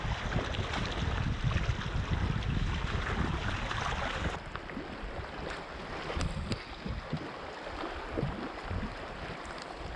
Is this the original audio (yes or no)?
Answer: yes